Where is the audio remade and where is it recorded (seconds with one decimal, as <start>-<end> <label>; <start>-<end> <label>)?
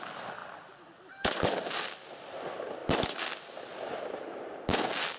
0.0-5.2 recorded